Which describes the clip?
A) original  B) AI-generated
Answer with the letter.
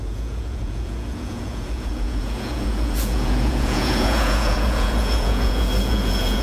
B